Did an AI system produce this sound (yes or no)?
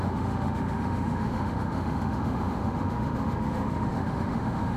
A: yes